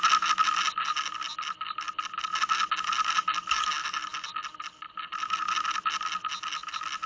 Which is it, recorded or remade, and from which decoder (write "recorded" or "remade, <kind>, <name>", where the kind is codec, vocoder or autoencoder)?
recorded